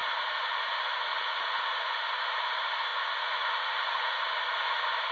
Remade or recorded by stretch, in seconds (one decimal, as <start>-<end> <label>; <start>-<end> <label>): 0.0-1.1 recorded; 1.1-2.0 remade; 2.0-2.9 recorded; 2.9-4.2 remade; 4.2-5.1 recorded